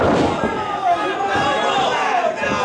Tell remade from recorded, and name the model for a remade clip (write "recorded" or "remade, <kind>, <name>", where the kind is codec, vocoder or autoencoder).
recorded